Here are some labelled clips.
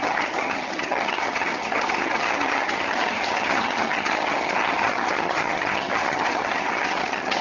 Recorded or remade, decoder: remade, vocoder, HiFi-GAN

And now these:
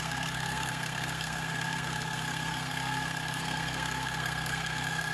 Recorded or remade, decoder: remade, codec, SNAC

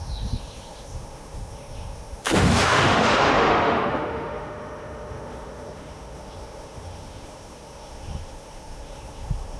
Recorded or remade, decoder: remade, autoencoder, DAC-VAE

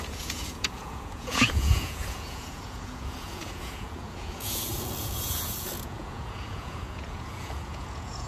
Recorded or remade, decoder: remade, vocoder, Vocos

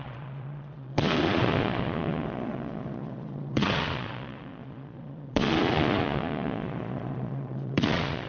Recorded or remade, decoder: remade, vocoder, Vocos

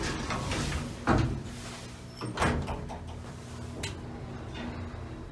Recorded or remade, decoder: recorded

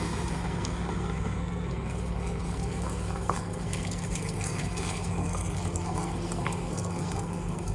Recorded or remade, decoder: remade, codec, SNAC